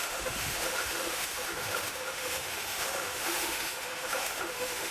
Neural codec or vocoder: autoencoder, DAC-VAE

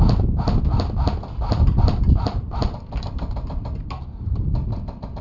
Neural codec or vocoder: none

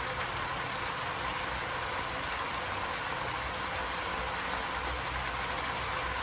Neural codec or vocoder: none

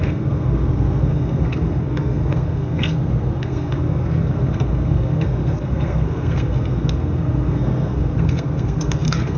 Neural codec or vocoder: codec, SNAC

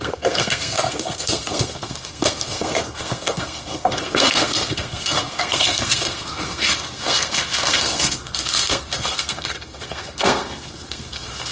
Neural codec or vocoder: codec, SNAC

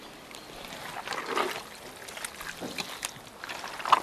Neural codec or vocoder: none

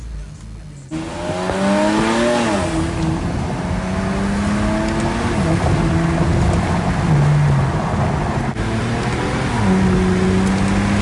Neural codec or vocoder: none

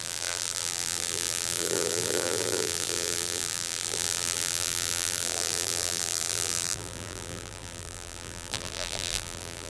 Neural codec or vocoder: vocoder, BigVGAN v2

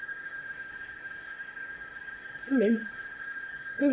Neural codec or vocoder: codec, SNAC